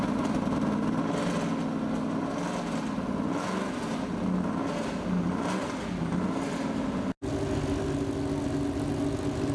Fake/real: real